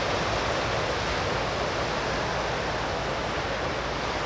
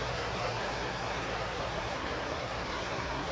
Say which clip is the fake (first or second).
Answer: second